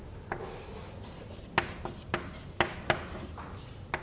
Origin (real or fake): real